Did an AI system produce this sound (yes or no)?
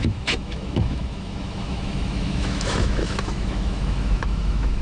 yes